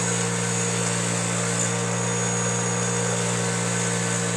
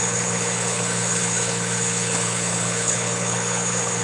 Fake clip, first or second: second